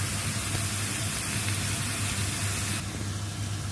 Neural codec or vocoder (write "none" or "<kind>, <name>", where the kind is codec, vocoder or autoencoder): none